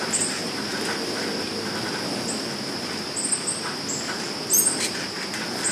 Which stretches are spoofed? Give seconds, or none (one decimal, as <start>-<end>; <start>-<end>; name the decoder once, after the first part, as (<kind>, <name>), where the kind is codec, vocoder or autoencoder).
none